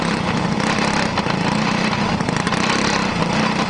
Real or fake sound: real